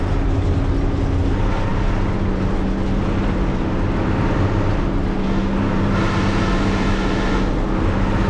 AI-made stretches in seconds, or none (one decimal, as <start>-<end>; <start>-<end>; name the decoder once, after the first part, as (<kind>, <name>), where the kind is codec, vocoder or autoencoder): none